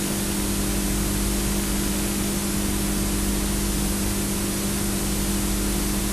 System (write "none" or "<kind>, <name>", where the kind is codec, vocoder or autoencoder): none